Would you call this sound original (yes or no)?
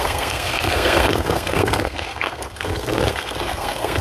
no